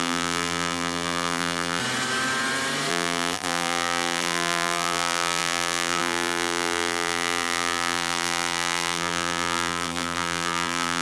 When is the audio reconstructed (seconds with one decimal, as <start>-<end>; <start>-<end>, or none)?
0.0-1.8; 2.9-11.0

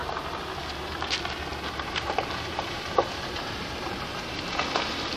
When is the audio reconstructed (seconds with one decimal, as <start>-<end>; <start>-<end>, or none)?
1.5-4.6

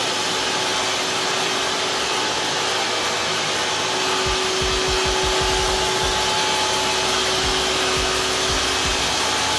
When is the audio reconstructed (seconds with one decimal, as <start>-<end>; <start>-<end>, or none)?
none

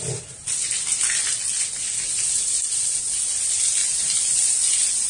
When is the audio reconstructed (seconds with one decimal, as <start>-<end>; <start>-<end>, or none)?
none